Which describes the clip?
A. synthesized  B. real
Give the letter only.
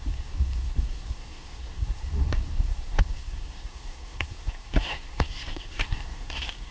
A